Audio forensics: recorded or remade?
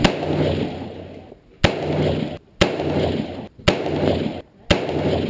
recorded